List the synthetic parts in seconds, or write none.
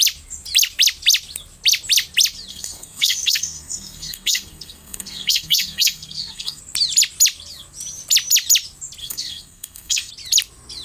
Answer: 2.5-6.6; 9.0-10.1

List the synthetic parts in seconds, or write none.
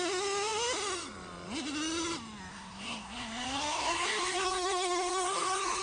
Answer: 2.5-5.8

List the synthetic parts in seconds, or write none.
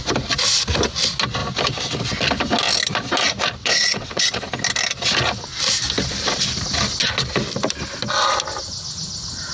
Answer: 3.6-4.4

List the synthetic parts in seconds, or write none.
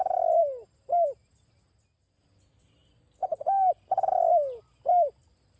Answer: none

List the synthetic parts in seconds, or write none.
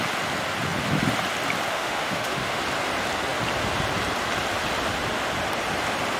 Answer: 1.7-2.6